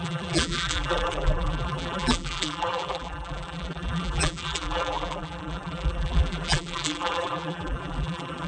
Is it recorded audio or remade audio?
remade